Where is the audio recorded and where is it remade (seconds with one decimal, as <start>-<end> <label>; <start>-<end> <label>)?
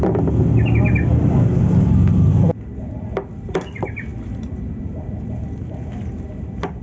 0.0-6.8 recorded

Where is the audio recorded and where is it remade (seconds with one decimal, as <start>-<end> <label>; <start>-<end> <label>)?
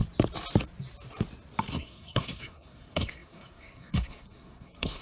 0.0-1.7 recorded; 1.7-5.0 remade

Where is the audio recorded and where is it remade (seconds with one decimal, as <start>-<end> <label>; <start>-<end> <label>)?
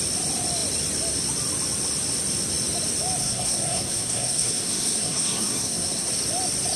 0.0-3.2 recorded; 3.2-6.1 remade; 6.1-6.8 recorded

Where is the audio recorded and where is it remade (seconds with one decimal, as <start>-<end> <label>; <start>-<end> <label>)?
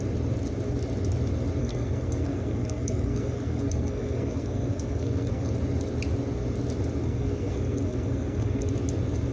0.0-1.6 recorded; 1.6-5.5 remade; 5.5-7.0 recorded; 7.0-8.7 remade; 8.7-9.3 recorded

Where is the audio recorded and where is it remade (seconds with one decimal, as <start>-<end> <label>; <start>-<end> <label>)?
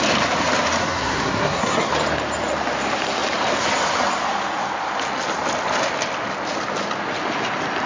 0.0-0.8 recorded; 0.8-1.9 remade; 1.9-7.9 recorded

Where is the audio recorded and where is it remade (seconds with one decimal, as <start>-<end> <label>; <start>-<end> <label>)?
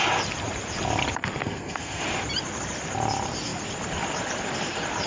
0.0-1.4 recorded; 1.4-2.0 remade; 2.0-5.1 recorded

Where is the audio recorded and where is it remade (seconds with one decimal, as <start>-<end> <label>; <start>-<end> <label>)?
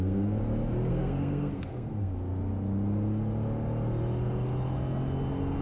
0.0-0.4 remade; 0.4-0.9 recorded; 0.9-2.1 remade; 2.1-5.6 recorded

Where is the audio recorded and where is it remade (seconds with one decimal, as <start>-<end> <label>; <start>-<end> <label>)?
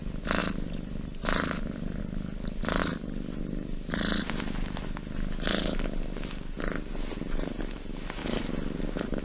0.0-9.2 recorded